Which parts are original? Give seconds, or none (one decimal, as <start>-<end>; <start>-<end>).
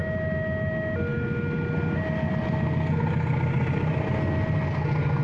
0.0-5.2